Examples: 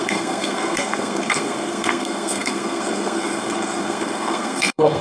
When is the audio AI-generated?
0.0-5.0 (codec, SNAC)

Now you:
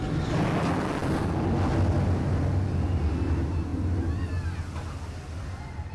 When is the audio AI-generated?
none

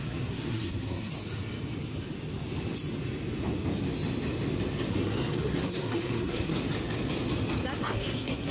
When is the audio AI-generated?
0.0-1.1 (codec, SNAC); 4.9-6.5; 7.8-8.5

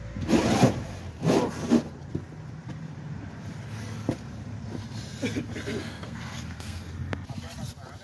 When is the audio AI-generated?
5.8-6.9 (codec, SNAC)

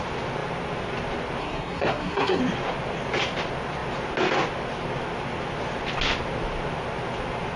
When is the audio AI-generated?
1.4-2.4 (codec, SNAC)

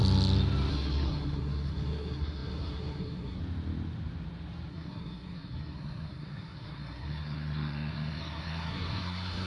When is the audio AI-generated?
0.7-3.4 (codec, SNAC); 4.7-9.5